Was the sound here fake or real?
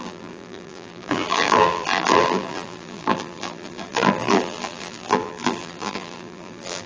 fake